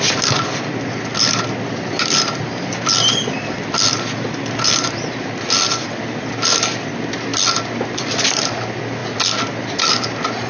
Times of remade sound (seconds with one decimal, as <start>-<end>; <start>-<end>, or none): none